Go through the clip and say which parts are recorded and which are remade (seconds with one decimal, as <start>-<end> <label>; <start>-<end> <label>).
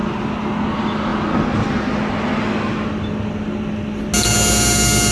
0.0-5.1 recorded